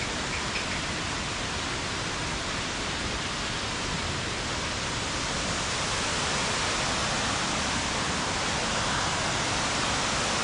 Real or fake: real